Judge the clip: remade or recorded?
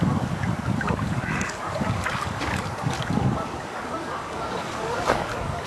remade